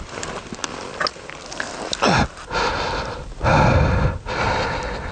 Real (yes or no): yes